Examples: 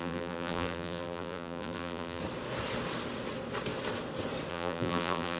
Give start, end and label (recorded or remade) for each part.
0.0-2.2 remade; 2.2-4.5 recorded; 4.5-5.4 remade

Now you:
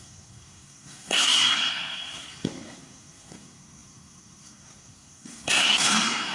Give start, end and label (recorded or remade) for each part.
0.0-6.3 remade

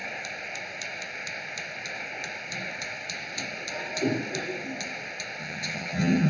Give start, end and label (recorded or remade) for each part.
0.0-5.4 recorded; 5.4-6.3 remade